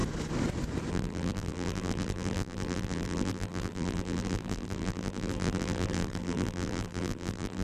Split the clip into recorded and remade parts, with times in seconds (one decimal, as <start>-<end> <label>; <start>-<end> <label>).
0.0-0.9 recorded; 0.9-7.6 remade